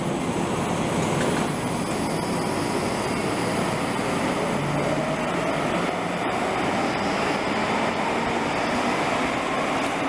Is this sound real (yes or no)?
yes